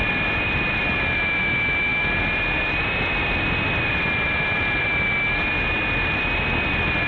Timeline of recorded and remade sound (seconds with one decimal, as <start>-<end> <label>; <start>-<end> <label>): 0.0-7.1 recorded